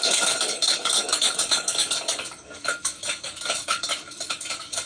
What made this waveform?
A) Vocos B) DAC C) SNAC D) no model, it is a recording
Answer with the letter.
B